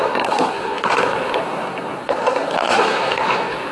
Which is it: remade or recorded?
remade